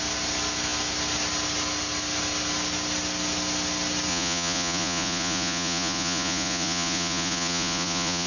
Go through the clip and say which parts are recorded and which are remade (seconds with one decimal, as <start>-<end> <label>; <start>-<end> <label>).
0.0-4.1 recorded; 4.1-8.3 remade